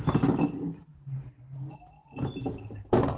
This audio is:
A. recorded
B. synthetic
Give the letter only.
A